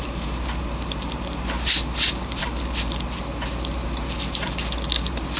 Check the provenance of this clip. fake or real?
fake